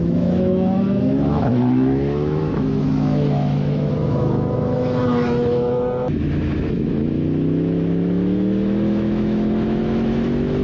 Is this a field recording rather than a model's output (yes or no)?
no